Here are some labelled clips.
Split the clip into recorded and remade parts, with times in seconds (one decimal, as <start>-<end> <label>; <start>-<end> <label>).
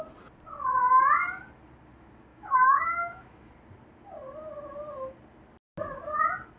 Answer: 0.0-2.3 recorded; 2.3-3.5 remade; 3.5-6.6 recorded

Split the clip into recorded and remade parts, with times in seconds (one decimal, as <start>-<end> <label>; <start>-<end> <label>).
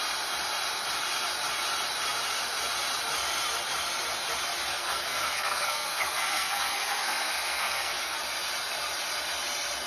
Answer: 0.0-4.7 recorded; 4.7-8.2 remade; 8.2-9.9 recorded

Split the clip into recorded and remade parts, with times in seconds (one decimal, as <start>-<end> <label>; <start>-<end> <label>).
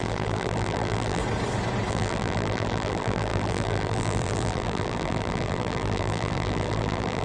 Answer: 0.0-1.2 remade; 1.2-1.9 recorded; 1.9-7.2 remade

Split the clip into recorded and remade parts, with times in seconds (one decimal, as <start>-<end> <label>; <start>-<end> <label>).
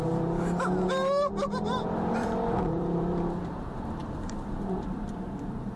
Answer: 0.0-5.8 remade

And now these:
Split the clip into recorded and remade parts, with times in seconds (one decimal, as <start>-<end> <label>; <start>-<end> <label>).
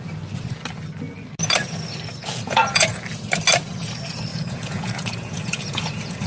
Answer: 0.0-2.2 recorded; 2.2-2.9 remade; 2.9-4.3 recorded; 4.3-6.3 remade